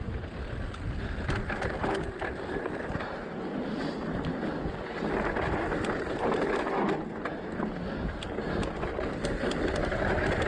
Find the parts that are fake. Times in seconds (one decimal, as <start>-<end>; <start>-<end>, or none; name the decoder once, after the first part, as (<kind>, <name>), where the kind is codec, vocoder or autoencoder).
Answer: none